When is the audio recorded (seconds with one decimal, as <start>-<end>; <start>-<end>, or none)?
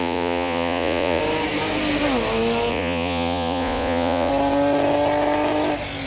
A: 1.2-2.7; 4.3-6.1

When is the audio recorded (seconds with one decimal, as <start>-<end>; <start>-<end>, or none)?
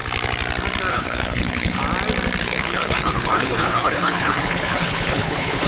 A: 0.0-0.9; 1.8-2.4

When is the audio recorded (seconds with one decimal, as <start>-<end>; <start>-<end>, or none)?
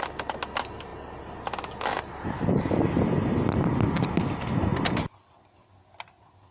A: 0.0-6.5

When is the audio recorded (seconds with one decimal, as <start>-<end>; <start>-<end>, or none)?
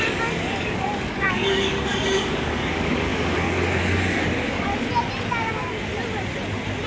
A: 4.7-5.5; 5.9-6.9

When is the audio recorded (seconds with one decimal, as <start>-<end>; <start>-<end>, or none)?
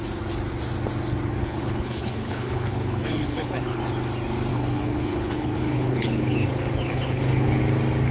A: 0.0-1.4; 3.8-4.5; 7.6-8.1